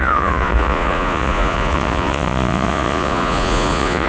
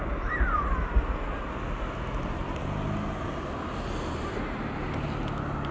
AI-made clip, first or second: first